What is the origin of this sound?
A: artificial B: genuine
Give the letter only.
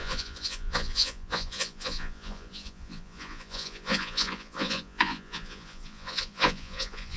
A